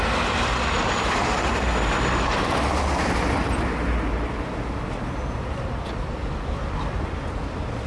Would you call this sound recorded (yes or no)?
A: yes